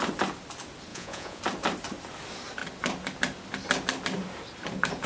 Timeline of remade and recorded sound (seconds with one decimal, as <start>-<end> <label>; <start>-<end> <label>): 0.0-0.9 recorded; 0.9-1.4 remade; 1.4-5.1 recorded